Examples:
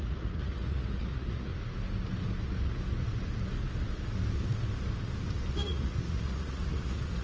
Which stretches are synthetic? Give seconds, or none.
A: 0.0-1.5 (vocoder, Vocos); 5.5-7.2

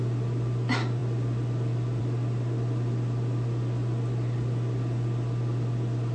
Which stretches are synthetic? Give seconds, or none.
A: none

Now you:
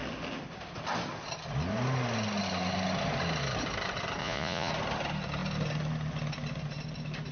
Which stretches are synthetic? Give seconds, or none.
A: 4.2-4.7 (vocoder, Vocos)

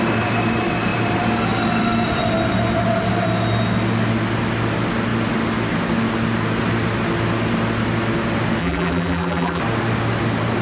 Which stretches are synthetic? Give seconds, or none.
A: 8.6-9.6 (vocoder, BigVGAN v2)

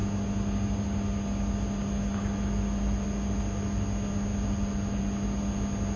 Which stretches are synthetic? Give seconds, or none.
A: none

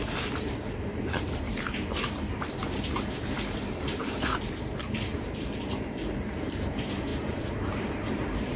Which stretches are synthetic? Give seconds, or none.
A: 0.0-8.6 (vocoder, BigVGAN v2)

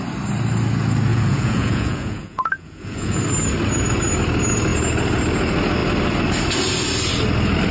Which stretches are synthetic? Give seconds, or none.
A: 1.1-3.2 (vocoder, Vocos)

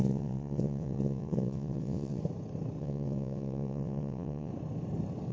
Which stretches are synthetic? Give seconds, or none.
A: 0.0-2.2 (vocoder, WaveNeXt); 2.8-4.5